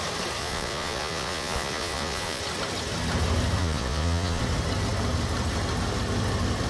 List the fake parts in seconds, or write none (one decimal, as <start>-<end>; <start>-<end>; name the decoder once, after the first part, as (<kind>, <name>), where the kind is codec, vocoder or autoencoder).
0.4-2.4 (vocoder, Vocos); 3.6-4.4